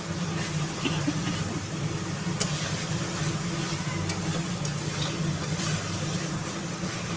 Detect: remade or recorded recorded